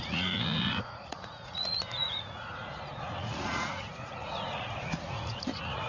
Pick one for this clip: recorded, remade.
remade